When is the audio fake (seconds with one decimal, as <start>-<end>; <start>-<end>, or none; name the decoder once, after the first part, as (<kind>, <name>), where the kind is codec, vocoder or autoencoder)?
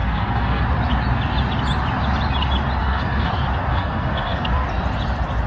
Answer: 0.0-0.6 (codec, SNAC); 2.8-3.3; 3.7-4.5